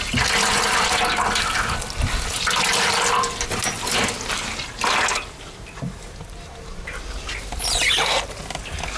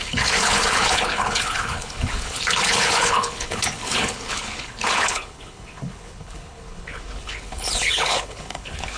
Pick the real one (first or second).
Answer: first